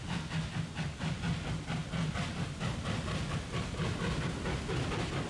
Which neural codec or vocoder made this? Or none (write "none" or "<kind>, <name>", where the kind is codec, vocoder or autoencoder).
none